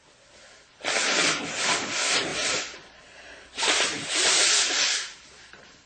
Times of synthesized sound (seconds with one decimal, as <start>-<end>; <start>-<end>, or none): 2.3-5.9